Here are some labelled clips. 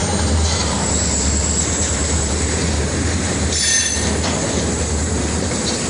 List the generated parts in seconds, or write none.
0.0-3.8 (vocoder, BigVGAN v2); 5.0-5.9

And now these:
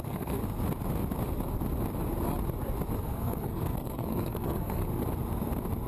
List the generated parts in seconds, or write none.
0.0-0.4 (codec, SNAC); 3.0-4.8